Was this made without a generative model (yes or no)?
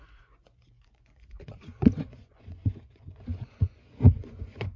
no